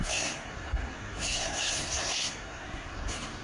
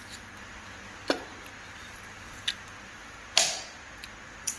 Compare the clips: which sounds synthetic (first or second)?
first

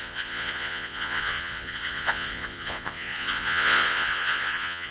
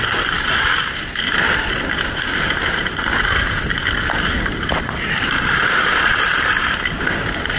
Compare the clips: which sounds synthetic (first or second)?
first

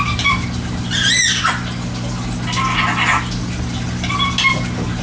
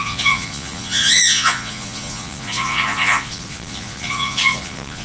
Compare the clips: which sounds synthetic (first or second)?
second